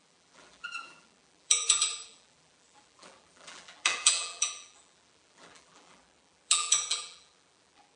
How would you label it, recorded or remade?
remade